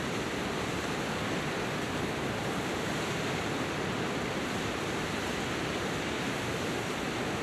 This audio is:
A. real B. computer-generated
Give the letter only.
B